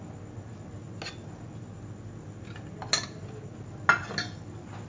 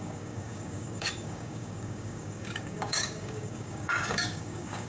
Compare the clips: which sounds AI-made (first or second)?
second